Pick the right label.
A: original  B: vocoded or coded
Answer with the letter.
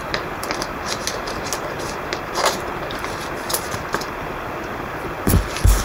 A